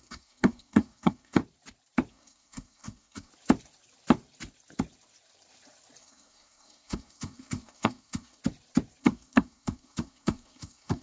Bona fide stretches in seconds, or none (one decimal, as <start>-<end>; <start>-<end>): 1.4-2.1; 3.3-6.0; 8.4-9.0